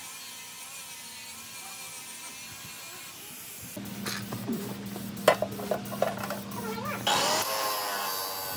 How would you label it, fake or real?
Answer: real